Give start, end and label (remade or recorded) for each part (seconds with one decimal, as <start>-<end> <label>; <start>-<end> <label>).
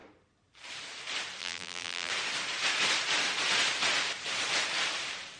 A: 0.0-1.4 recorded; 1.4-2.1 remade; 2.1-5.4 recorded